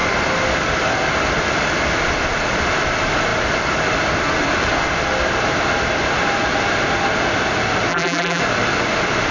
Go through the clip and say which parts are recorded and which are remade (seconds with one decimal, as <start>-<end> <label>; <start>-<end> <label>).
0.0-7.9 recorded; 7.9-8.4 remade; 8.4-9.3 recorded